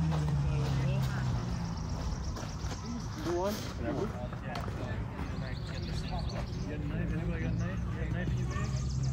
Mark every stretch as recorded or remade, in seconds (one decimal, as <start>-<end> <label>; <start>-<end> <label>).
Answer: 0.0-2.9 recorded; 2.9-4.1 remade; 4.1-9.1 recorded